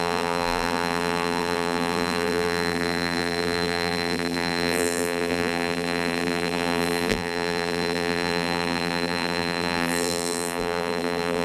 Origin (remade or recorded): remade